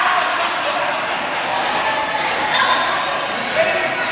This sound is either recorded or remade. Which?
recorded